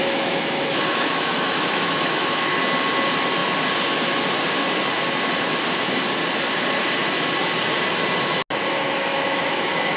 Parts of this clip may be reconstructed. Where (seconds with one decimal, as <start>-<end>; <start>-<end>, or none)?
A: 0.0-2.6; 9.1-10.0